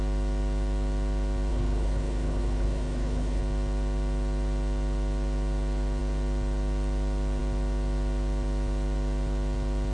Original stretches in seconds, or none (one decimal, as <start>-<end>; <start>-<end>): 0.0-1.5; 3.4-9.9